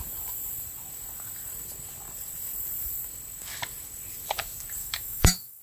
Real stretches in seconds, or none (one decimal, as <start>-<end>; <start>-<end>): 0.0-4.8